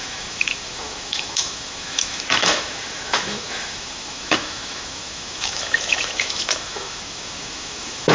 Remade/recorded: remade